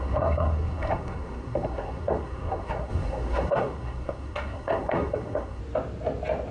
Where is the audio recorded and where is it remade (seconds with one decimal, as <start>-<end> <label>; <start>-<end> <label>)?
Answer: 0.0-5.6 remade; 5.6-6.5 recorded